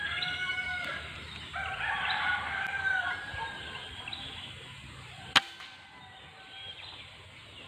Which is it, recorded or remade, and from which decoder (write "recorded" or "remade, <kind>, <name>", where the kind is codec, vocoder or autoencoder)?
recorded